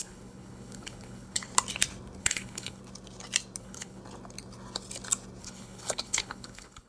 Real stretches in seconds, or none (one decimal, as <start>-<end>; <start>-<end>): 1.5-2.2; 2.8-3.6; 4.0-5.4